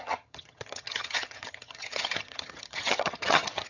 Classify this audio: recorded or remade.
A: remade